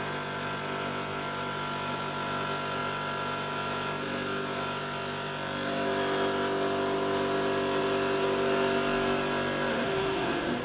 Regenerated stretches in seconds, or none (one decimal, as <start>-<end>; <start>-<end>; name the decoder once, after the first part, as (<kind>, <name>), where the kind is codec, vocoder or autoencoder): 9.7-10.6 (autoencoder, DAC-VAE)